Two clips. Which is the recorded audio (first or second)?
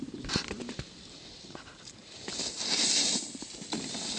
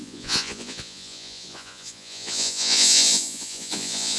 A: first